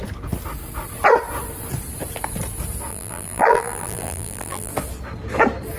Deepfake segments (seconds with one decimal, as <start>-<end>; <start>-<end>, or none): 2.9-4.7

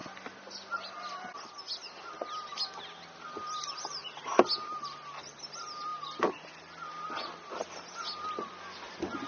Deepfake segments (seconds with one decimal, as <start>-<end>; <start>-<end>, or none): none

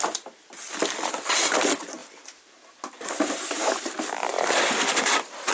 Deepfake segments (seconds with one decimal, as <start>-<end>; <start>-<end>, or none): 2.0-5.5

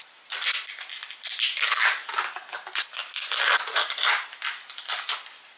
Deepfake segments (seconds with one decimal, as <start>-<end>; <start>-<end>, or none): none